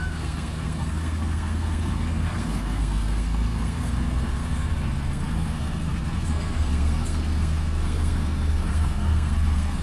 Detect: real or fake fake